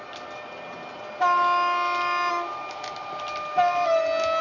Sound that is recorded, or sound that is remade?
recorded